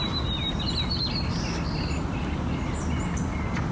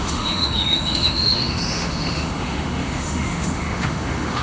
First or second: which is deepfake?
second